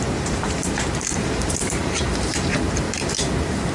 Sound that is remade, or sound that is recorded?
remade